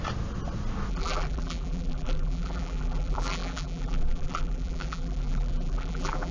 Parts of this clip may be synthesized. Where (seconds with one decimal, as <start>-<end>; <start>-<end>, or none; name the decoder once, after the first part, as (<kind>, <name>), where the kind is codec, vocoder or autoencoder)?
0.9-6.3 (vocoder, BigVGAN v2)